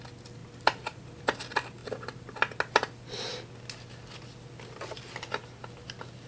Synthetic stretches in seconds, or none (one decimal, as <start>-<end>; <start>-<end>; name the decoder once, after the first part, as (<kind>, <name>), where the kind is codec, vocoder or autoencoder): 0.4-1.2 (vocoder, BigVGAN v2)